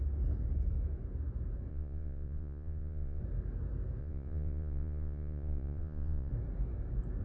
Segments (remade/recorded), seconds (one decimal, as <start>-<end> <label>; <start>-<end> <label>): 0.0-1.7 recorded; 1.7-3.2 remade; 3.2-4.0 recorded; 4.0-6.3 remade; 6.3-7.2 recorded